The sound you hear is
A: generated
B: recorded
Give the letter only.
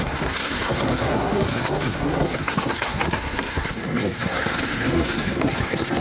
A